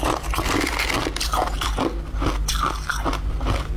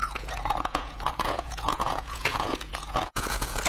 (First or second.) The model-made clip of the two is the second